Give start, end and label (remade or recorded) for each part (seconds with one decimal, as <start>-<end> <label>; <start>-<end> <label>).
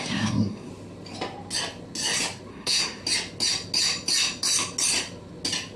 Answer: 0.0-0.7 remade; 0.7-2.5 recorded; 2.5-3.0 remade; 3.0-5.8 recorded